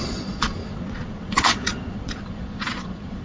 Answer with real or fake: fake